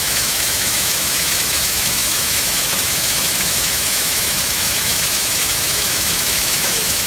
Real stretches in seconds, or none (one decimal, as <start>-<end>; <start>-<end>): none